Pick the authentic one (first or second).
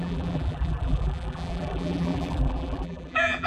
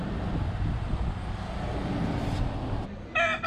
second